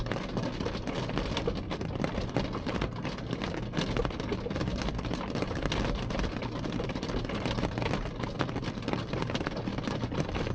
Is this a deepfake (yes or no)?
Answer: no